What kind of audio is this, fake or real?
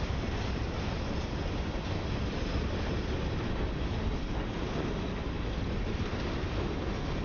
real